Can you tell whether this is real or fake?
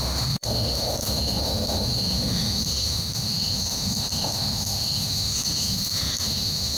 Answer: fake